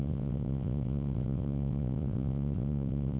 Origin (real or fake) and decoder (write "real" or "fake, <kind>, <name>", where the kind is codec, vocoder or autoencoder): fake, vocoder, WaveNeXt